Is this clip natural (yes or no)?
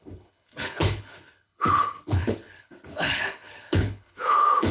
no